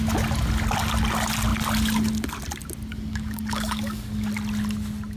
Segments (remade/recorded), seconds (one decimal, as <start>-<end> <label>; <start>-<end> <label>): 0.0-2.9 recorded; 2.9-4.3 remade; 4.3-5.2 recorded